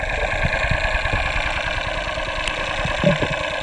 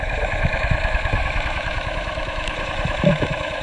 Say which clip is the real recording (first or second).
first